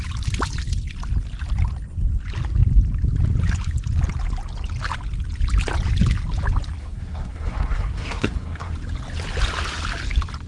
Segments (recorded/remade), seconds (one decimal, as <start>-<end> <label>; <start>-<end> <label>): 0.0-6.8 recorded; 6.8-8.7 remade; 8.7-10.5 recorded